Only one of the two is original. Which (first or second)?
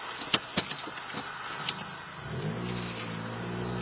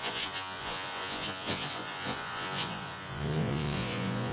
first